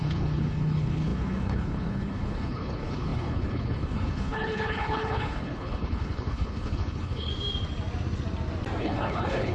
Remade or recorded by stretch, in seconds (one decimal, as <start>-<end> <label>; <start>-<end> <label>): 0.0-7.3 remade; 7.3-8.8 recorded; 8.8-9.5 remade